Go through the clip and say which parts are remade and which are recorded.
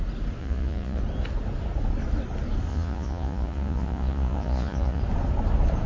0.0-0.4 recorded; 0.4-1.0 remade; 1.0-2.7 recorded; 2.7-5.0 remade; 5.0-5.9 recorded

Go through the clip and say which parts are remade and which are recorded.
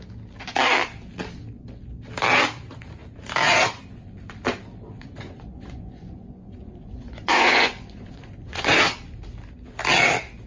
0.0-4.9 recorded; 4.9-8.7 remade; 8.7-10.5 recorded